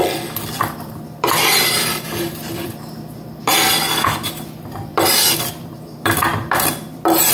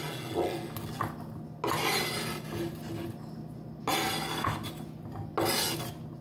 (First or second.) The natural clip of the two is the second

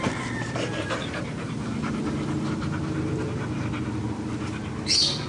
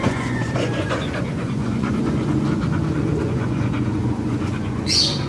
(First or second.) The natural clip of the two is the first